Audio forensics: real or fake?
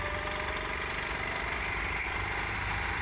real